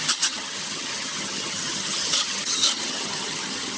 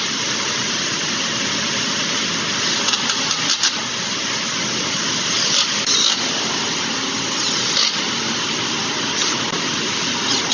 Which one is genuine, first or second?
second